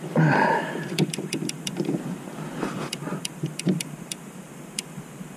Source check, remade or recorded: remade